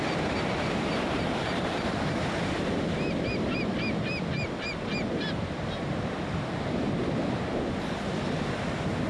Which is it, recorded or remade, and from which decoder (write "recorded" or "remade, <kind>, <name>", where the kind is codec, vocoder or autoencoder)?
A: remade, vocoder, BigVGAN v2